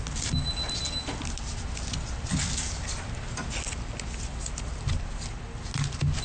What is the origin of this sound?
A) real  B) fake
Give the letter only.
A